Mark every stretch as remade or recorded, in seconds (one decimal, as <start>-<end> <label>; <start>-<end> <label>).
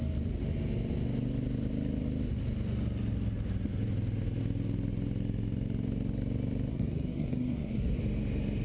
0.0-6.7 recorded; 6.7-8.0 remade; 8.0-8.6 recorded